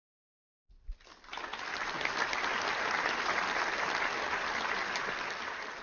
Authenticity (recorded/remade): recorded